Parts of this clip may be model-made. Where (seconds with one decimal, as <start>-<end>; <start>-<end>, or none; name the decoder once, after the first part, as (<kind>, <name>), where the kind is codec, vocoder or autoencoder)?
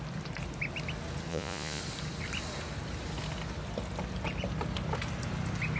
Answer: 1.3-1.8 (vocoder, Vocos)